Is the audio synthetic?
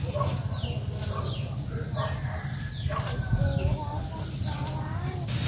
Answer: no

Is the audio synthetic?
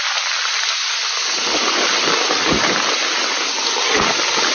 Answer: no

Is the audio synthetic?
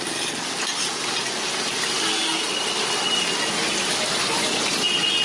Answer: no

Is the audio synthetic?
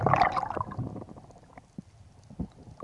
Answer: no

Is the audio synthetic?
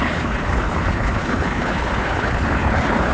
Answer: yes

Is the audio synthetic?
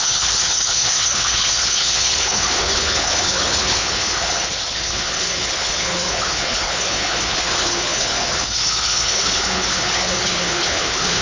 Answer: yes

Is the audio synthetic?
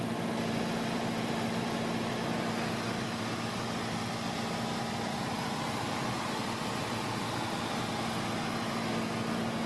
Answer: no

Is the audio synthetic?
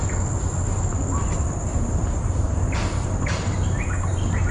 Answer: no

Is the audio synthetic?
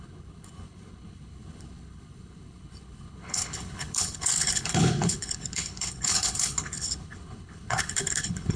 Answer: yes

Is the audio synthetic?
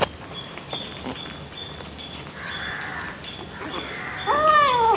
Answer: no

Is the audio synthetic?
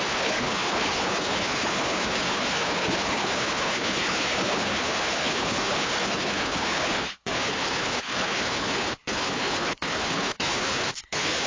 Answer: yes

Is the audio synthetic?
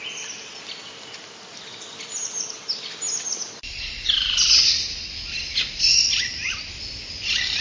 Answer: no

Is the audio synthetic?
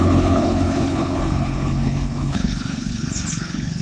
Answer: yes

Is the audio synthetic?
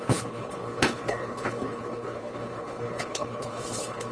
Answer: yes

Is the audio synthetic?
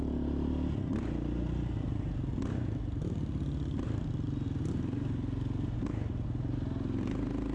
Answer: no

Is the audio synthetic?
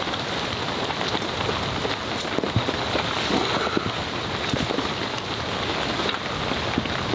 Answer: no